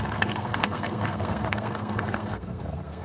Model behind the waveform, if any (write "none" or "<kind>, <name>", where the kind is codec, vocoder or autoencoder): codec, SNAC